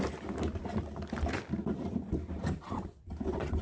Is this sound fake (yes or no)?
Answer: no